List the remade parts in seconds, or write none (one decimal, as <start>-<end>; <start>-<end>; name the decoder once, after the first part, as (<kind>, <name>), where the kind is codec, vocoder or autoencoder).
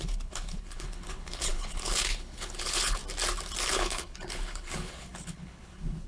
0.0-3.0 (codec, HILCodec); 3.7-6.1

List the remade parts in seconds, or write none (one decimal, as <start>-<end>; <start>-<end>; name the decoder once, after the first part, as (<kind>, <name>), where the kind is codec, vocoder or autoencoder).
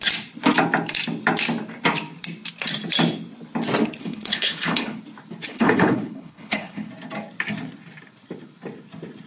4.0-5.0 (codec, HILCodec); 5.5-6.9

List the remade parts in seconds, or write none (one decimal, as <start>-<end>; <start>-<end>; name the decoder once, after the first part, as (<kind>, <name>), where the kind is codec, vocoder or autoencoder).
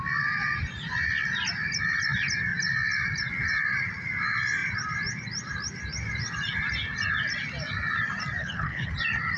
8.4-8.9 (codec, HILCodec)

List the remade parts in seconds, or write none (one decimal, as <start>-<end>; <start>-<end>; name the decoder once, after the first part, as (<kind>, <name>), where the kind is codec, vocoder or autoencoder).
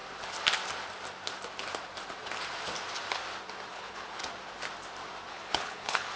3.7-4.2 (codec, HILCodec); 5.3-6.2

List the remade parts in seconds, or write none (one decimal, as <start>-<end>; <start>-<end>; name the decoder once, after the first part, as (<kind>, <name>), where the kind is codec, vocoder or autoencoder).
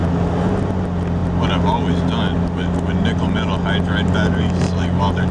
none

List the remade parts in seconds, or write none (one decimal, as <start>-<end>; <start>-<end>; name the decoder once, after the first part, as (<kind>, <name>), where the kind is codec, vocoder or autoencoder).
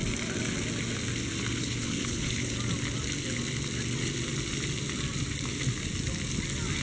1.6-2.5 (codec, HILCodec)